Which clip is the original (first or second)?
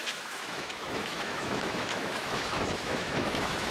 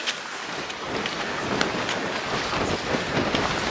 second